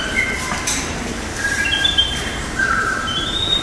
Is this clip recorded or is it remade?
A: remade